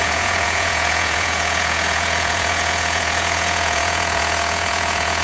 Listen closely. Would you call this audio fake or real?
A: fake